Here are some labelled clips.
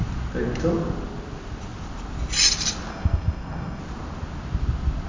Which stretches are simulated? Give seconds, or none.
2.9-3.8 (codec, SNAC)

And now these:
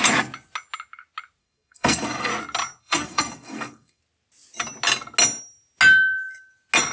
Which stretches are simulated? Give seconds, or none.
1.4-2.3 (codec, SNAC); 2.8-4.0

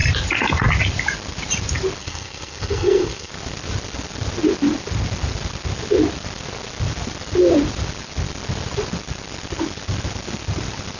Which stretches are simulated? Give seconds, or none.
2.0-3.3 (codec, SNAC)

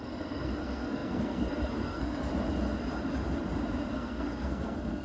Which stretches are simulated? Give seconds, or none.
0.0-2.3 (codec, SNAC); 3.9-5.0

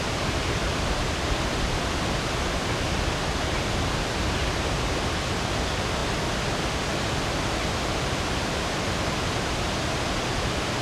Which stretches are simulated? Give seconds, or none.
none

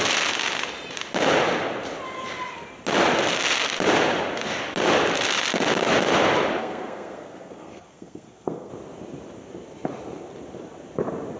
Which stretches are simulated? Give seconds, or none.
6.6-8.7 (codec, SNAC)

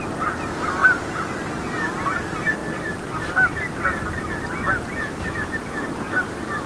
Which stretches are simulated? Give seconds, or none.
none